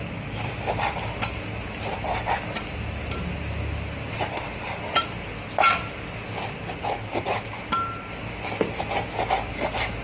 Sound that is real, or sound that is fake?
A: real